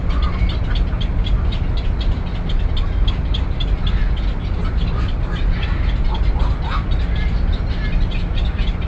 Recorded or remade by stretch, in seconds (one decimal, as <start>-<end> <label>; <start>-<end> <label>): 0.0-8.9 recorded